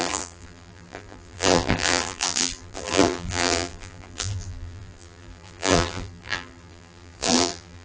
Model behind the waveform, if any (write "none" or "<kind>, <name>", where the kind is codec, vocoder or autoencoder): vocoder, BigVGAN v2